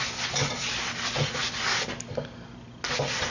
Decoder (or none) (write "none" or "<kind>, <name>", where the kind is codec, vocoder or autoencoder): none